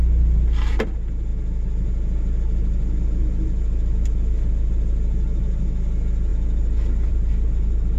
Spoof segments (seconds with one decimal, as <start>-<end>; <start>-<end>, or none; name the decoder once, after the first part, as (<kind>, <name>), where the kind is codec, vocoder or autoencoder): none